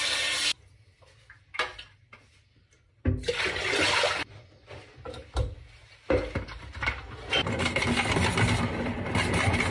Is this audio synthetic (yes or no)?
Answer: no